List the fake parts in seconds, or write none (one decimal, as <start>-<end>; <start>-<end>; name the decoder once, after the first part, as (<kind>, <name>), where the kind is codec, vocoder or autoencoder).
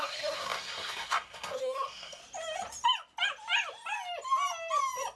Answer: 0.0-2.2 (codec, SNAC)